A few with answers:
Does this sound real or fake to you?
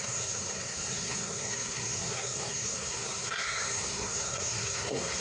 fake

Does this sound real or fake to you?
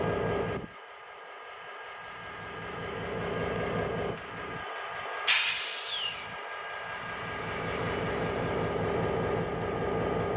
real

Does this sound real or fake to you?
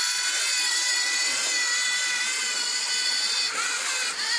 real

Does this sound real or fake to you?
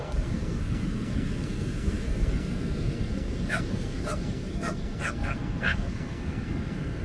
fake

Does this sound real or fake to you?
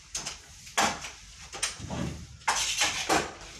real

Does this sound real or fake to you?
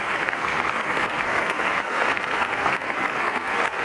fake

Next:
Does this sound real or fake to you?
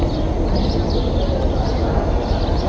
real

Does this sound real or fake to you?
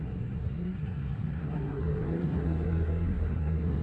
fake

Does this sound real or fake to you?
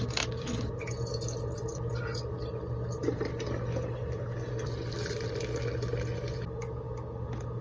real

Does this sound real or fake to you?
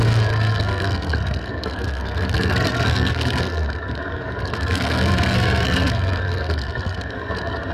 fake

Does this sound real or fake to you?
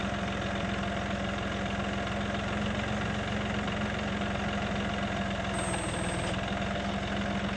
real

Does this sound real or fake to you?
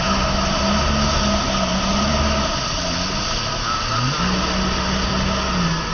real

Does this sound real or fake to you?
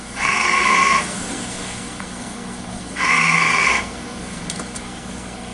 fake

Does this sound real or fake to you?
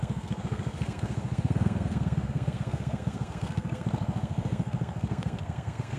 fake